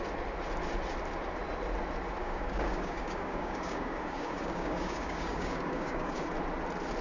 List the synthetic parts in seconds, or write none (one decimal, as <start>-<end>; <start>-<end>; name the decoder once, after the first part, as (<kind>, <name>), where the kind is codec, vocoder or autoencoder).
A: 2.2-6.2 (codec, DAC)